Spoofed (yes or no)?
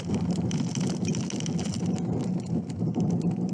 no